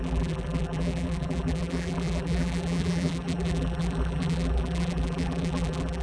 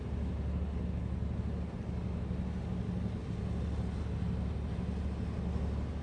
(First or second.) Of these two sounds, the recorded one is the second